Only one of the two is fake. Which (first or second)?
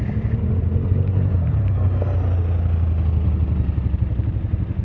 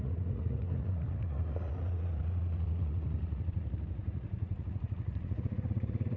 second